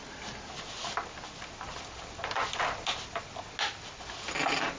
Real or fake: real